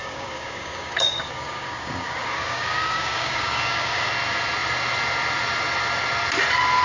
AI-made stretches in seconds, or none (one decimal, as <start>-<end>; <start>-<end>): 0.0-4.1

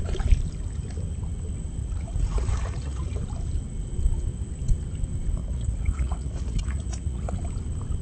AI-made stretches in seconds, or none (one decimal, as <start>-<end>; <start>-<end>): 1.8-3.2; 5.4-7.4

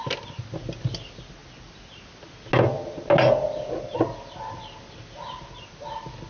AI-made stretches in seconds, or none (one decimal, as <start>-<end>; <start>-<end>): none

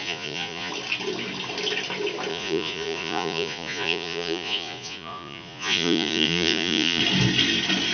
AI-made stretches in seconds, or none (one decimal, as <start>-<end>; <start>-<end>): 0.0-0.7; 2.3-7.0

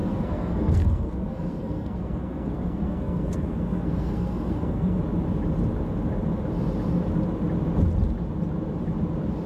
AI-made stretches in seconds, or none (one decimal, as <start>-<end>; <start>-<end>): 0.0-5.0